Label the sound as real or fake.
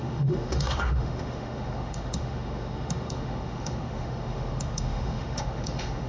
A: fake